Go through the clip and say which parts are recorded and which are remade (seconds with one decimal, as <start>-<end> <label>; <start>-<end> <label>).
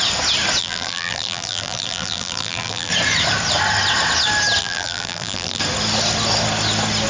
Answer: 0.0-0.6 recorded; 0.6-2.9 remade; 2.9-4.6 recorded; 4.6-5.6 remade; 5.6-7.1 recorded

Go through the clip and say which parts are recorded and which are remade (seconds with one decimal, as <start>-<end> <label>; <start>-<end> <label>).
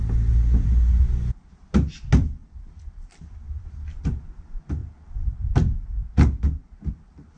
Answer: 0.0-2.4 recorded; 2.4-3.9 remade; 3.9-7.4 recorded